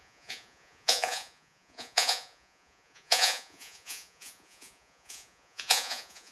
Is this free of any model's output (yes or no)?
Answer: no